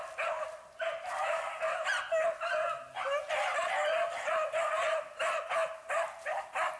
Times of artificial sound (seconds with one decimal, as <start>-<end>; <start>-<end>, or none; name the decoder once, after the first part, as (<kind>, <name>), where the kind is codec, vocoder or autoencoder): 0.0-1.9 (vocoder, BigVGAN v2); 5.5-6.8